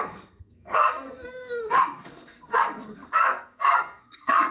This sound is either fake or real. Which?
fake